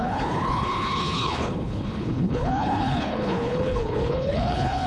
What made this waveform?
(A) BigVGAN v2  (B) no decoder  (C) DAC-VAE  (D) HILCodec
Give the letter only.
D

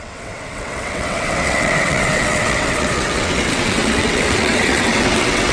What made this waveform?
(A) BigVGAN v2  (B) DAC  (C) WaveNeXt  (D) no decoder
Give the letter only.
C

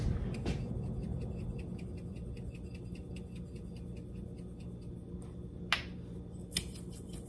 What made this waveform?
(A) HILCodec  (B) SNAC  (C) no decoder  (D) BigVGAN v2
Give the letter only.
C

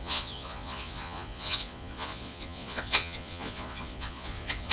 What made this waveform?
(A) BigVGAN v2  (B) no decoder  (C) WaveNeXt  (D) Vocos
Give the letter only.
D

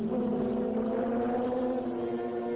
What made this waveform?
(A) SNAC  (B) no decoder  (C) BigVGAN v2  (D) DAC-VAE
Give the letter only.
B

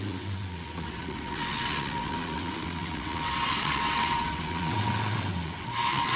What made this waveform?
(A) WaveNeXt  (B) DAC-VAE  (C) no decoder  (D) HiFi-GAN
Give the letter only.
A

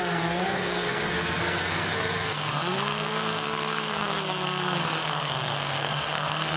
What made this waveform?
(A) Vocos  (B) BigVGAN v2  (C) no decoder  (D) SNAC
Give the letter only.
D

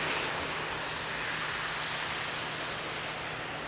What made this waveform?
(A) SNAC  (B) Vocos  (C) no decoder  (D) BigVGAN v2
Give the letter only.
C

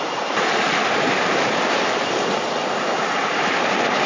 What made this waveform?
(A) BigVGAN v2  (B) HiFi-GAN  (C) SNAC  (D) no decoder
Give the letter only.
A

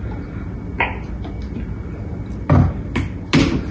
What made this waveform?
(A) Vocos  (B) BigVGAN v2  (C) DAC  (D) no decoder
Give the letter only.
D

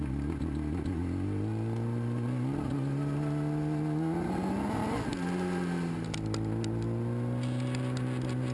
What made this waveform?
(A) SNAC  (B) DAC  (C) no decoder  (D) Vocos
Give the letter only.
C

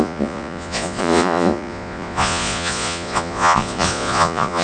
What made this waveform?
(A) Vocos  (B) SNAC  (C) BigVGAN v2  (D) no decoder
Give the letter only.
A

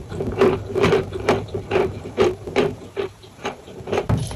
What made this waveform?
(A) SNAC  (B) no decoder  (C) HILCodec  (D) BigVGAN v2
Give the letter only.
D